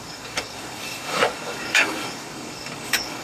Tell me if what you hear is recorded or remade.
remade